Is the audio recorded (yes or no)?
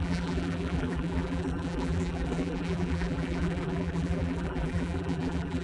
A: no